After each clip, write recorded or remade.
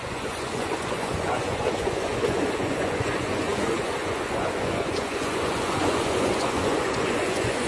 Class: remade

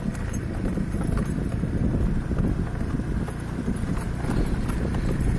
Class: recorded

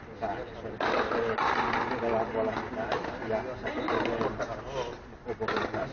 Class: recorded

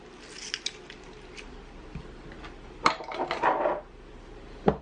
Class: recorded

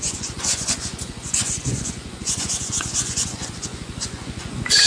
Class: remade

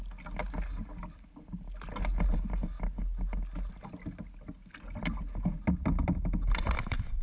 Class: recorded